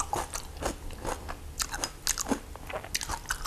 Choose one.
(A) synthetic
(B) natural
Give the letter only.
B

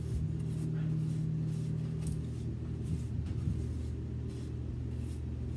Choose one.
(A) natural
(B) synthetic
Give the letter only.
A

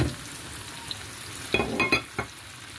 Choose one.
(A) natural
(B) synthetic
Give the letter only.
A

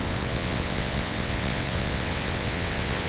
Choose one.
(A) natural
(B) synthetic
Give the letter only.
B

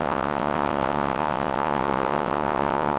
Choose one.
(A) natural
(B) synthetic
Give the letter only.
B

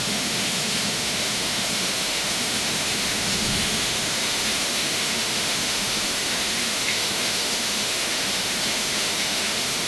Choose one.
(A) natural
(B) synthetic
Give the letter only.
B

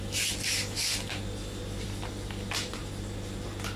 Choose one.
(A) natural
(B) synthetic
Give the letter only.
A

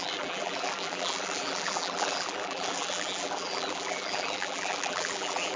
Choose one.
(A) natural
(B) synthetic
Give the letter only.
B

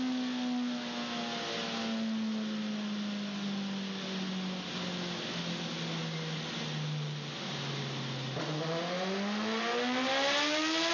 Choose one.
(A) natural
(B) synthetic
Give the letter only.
A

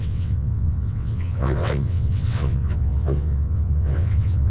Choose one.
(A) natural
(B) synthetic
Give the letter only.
B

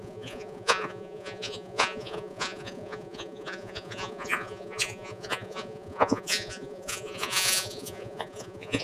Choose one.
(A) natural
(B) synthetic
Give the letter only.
B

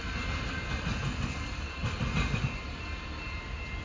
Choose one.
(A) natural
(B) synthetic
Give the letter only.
A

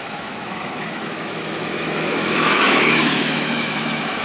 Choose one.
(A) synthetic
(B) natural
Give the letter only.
A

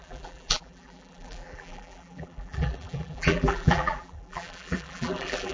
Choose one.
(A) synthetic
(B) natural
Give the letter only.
A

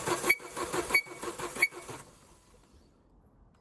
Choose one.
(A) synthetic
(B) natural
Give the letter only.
B